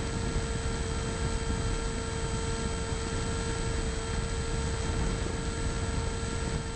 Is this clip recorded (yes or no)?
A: yes